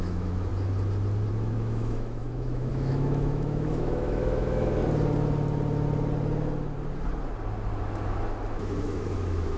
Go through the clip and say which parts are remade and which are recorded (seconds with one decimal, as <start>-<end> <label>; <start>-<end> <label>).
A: 0.0-0.5 remade; 0.5-1.3 recorded; 1.3-4.8 remade; 4.8-8.5 recorded; 8.5-9.6 remade